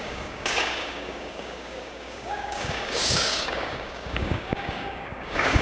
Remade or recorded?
remade